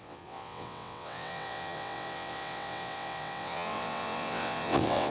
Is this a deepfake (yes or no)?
yes